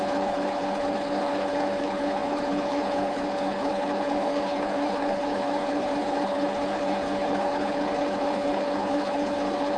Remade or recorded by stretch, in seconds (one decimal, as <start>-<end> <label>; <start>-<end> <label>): 0.0-9.8 remade